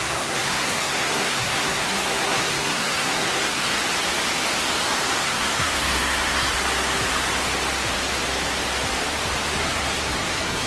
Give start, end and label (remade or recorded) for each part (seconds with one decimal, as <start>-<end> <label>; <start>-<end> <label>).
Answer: 0.0-3.7 remade; 3.7-5.2 recorded; 5.2-6.5 remade; 6.5-9.6 recorded; 9.6-10.7 remade